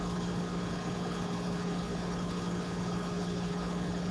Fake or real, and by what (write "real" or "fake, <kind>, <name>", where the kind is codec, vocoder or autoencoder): fake, codec, HILCodec